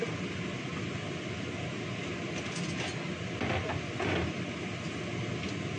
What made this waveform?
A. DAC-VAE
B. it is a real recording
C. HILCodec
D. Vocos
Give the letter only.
B